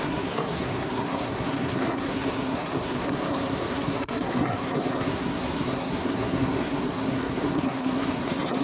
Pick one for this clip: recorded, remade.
remade